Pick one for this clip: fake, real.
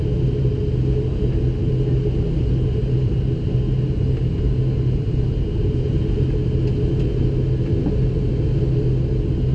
real